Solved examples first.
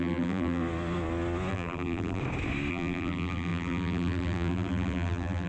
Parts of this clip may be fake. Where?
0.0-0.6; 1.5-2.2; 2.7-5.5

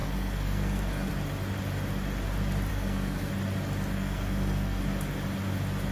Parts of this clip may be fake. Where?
0.0-1.1; 2.7-3.3; 3.9-4.8

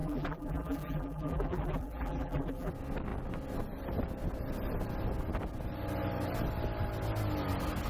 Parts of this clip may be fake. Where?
0.0-2.7

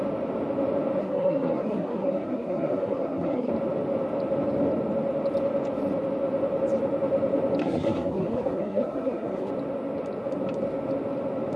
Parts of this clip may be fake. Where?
1.0-3.5; 7.6-9.5